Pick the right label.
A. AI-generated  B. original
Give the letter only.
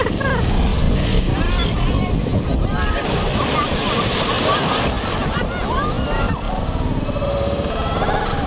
B